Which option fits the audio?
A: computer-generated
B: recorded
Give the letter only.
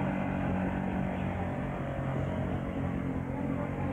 B